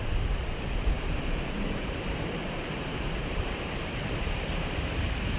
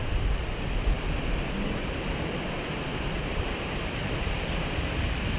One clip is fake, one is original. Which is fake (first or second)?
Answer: first